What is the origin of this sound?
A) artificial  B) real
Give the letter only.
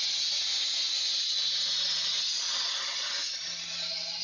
B